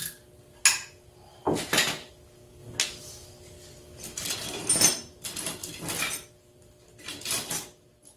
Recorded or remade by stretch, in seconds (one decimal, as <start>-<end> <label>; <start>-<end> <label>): 0.0-1.3 recorded; 1.3-2.1 remade; 2.1-8.2 recorded